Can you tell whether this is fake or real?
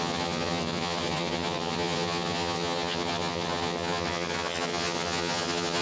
fake